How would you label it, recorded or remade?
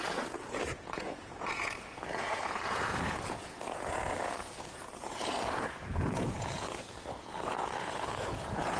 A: remade